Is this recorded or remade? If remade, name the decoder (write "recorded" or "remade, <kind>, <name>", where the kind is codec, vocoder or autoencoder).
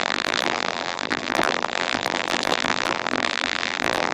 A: remade, vocoder, BigVGAN v2